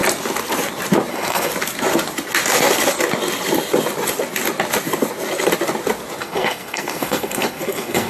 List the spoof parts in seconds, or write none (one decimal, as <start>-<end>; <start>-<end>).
1.1-1.5; 6.2-8.1